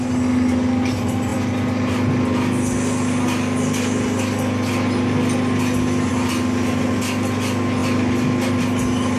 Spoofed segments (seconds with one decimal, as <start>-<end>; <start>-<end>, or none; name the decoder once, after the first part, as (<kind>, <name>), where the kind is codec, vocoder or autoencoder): none